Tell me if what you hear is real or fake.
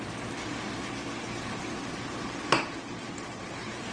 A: real